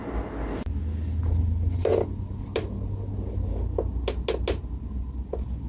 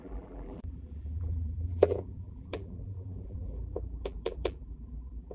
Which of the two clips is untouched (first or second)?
first